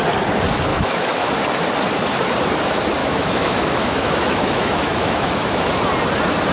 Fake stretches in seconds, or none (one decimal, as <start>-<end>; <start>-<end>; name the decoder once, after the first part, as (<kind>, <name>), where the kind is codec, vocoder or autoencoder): 0.7-1.3 (autoencoder, DAC-VAE); 3.0-5.7